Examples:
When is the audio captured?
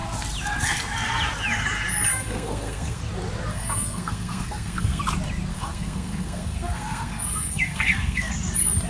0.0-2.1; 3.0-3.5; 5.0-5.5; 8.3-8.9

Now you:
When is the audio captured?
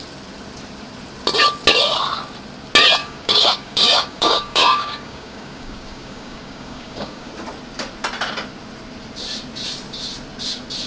0.0-3.0; 7.3-10.9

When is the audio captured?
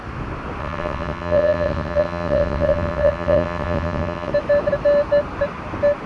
0.0-0.6; 4.3-6.1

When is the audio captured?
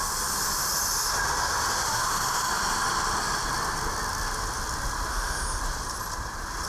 0.0-1.9; 2.5-5.1; 5.6-6.7